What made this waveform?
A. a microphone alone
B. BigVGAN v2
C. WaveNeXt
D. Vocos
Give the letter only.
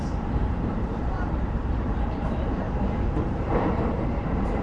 B